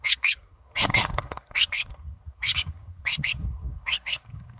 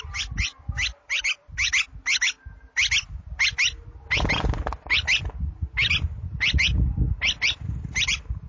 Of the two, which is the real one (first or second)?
second